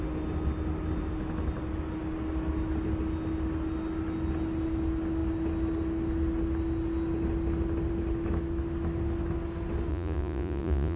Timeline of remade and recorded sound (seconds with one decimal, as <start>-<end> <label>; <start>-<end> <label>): 0.0-9.9 recorded; 9.9-11.0 remade